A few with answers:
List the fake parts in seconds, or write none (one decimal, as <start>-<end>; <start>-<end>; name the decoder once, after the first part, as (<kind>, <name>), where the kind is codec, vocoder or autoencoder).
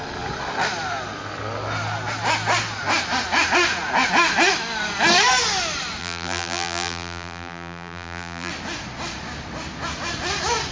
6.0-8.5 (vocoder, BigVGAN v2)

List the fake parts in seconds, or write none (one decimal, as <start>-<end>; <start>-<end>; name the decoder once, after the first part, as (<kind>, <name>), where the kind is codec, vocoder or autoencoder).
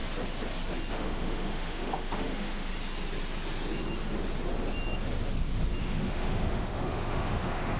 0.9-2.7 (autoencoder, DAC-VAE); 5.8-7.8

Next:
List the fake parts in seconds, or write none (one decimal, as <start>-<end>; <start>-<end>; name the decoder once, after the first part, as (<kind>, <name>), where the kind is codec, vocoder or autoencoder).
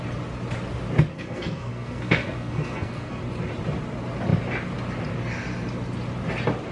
1.1-3.2 (codec, SNAC)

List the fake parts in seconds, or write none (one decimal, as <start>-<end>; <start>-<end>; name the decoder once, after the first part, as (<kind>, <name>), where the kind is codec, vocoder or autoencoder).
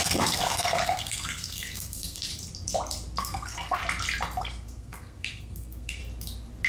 0.0-2.3 (codec, SNAC); 3.2-3.8; 4.4-6.0